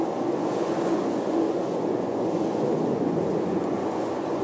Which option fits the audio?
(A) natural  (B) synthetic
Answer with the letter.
B